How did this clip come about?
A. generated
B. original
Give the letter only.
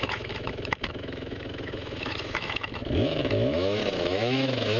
A